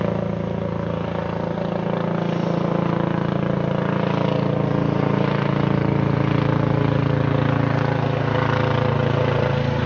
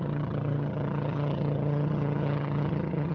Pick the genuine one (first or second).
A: first